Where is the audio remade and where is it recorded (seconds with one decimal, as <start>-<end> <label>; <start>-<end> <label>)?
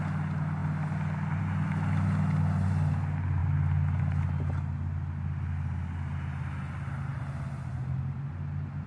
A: 0.0-8.9 recorded